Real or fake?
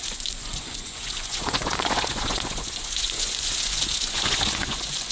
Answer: fake